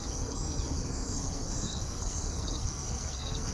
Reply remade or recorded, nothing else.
remade